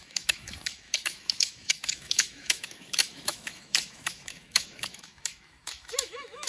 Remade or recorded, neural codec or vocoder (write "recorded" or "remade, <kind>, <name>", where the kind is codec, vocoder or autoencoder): remade, autoencoder, DAC-VAE